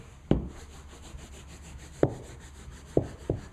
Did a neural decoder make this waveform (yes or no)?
no